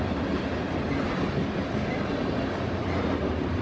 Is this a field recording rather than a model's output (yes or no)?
yes